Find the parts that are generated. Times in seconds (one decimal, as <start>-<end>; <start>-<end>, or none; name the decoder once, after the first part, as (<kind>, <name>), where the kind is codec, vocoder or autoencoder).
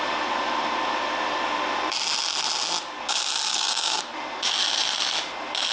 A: 3.5-4.0 (codec, DAC)